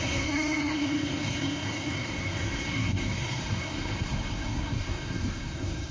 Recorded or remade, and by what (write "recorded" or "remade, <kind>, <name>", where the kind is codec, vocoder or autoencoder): remade, codec, SNAC